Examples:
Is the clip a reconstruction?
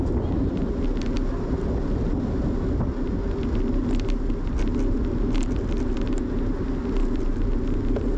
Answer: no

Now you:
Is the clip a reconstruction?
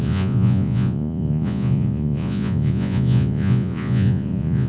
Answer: yes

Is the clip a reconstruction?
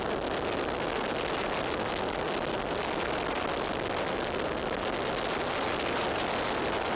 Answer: no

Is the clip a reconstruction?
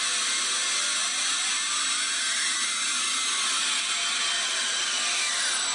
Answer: no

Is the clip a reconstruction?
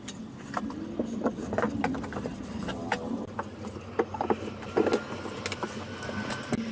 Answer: no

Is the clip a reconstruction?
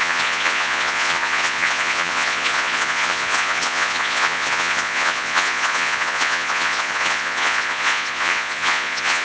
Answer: yes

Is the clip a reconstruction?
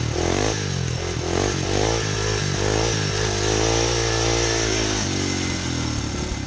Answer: no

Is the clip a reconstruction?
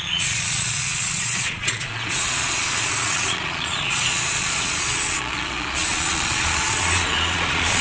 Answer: yes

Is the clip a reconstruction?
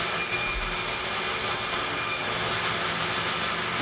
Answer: no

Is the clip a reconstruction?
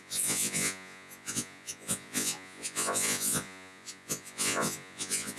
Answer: yes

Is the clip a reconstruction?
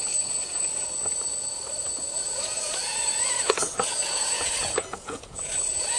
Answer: yes